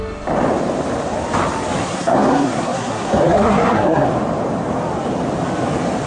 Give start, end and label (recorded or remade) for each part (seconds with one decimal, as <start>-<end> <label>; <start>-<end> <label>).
0.0-1.8 recorded; 1.8-4.1 remade; 4.1-6.1 recorded